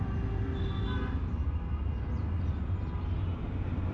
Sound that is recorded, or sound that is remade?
recorded